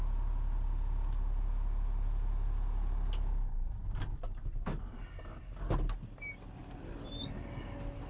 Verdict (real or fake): real